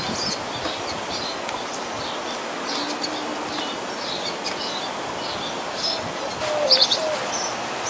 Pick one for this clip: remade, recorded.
recorded